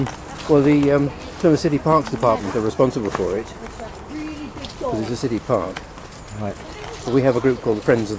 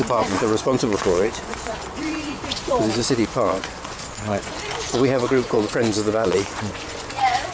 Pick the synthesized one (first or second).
second